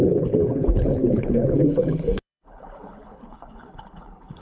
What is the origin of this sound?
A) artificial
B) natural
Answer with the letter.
A